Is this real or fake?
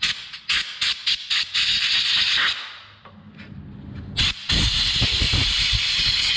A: real